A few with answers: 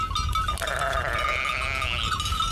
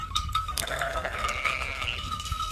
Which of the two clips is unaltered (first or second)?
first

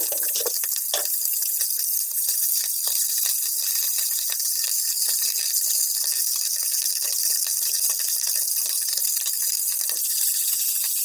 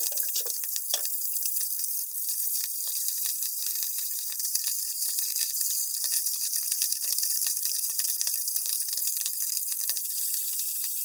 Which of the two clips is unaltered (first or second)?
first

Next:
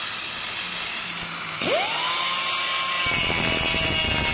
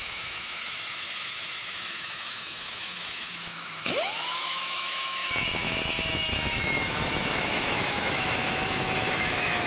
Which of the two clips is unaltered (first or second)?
first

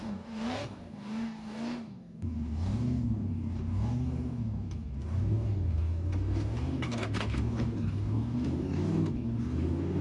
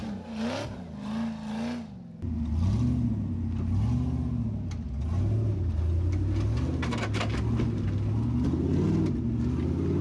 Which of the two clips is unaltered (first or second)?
second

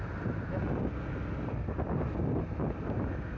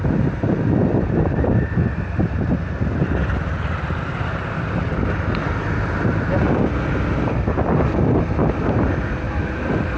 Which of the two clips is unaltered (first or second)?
first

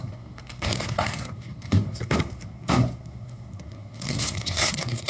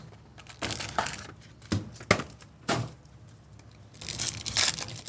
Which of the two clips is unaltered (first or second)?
second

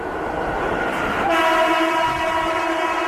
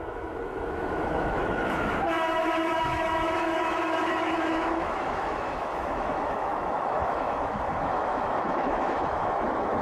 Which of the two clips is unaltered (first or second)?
first